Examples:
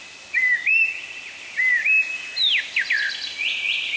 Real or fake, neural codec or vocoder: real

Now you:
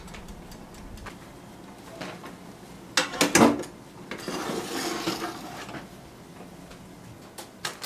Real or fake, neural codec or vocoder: real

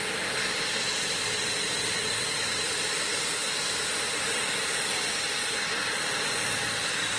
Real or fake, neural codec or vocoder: fake, vocoder, BigVGAN v2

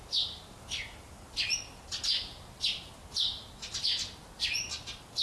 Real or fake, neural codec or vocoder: real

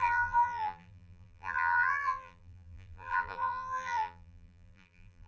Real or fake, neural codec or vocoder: fake, vocoder, BigVGAN v2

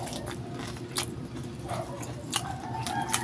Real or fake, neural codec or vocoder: fake, vocoder, BigVGAN v2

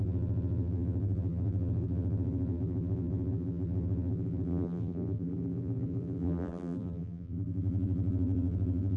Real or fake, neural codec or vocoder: fake, vocoder, BigVGAN v2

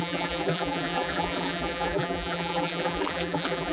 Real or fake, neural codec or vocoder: fake, vocoder, BigVGAN v2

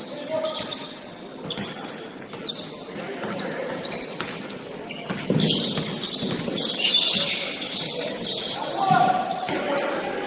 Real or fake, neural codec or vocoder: real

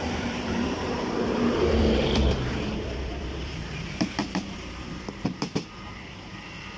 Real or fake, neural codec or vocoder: fake, vocoder, BigVGAN v2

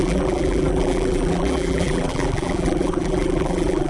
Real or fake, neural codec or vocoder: fake, vocoder, BigVGAN v2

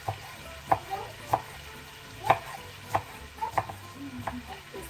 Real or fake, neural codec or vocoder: real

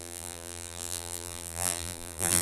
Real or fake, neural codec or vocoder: fake, vocoder, BigVGAN v2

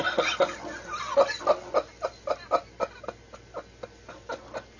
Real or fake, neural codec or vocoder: real